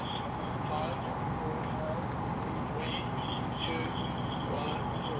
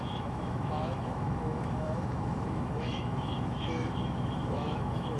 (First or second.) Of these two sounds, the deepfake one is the second